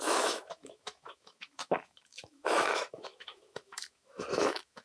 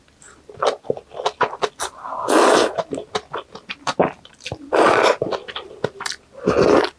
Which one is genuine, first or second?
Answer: second